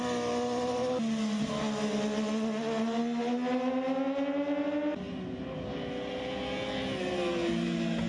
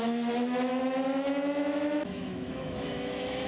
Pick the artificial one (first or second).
second